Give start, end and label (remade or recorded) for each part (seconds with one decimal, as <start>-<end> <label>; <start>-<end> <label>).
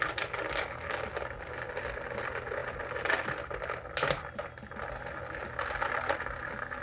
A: 0.0-6.8 recorded